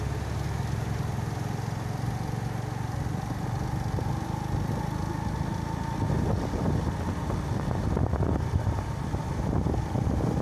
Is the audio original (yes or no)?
yes